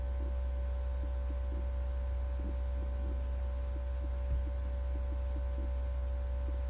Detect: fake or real real